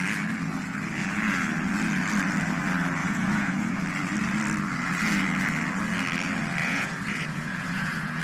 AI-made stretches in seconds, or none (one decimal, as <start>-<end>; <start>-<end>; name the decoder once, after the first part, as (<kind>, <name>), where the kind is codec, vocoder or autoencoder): 3.0-3.8 (vocoder, Vocos); 6.6-8.2